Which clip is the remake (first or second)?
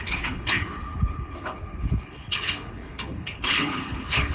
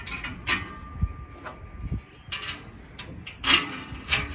first